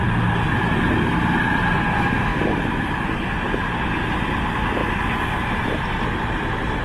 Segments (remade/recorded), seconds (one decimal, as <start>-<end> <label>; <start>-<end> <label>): 0.0-6.8 recorded